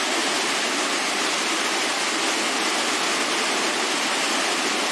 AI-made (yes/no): no